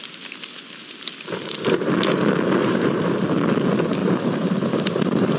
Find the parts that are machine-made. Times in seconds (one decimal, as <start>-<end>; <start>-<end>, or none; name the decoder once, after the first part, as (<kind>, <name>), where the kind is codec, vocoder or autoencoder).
2.6-3.1 (vocoder, BigVGAN v2); 4.0-5.4